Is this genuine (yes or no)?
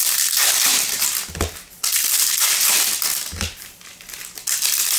yes